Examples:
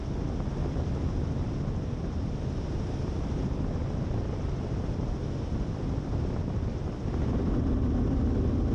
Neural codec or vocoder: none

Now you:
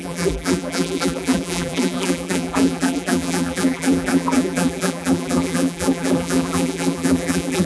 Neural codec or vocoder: vocoder, BigVGAN v2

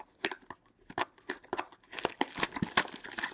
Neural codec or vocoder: none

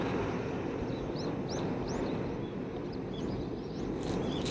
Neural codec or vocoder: none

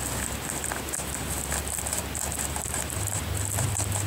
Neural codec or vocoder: vocoder, BigVGAN v2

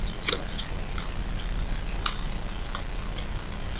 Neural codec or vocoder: none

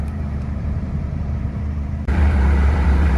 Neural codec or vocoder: vocoder, BigVGAN v2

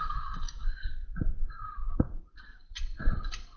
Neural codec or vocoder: none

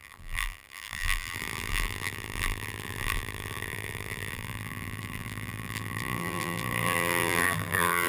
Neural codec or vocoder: vocoder, BigVGAN v2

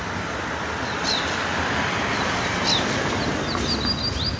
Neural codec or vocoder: none